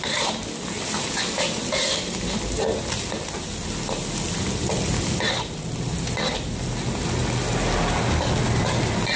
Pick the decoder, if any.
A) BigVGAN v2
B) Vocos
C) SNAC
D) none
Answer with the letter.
D